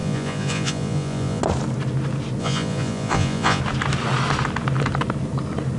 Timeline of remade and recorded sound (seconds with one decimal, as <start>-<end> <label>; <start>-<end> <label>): 0.0-1.4 remade; 1.4-2.4 recorded; 2.4-3.6 remade; 3.6-5.8 recorded